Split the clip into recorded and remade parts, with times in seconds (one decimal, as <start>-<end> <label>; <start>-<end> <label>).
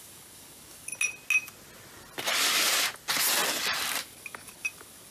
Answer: 0.0-0.9 remade; 0.9-4.0 recorded; 4.0-5.1 remade